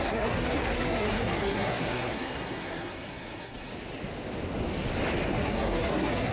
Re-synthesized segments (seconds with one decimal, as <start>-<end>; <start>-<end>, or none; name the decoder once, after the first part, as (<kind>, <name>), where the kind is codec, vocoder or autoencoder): 0.0-3.7 (codec, SNAC); 5.3-6.3